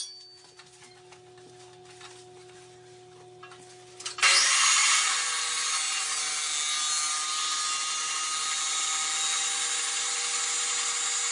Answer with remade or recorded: recorded